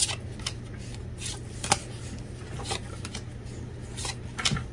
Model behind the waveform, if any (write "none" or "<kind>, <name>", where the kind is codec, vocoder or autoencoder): none